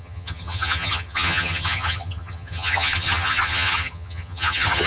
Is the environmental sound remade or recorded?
remade